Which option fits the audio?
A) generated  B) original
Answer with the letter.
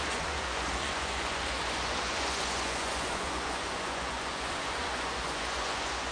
A